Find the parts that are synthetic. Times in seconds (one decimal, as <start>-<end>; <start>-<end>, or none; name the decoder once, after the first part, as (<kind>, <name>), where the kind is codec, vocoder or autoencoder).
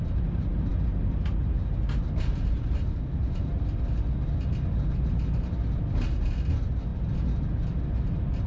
0.7-3.5 (vocoder, BigVGAN v2)